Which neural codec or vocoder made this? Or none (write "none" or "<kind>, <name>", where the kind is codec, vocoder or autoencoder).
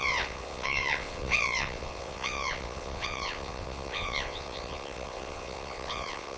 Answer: vocoder, WaveNeXt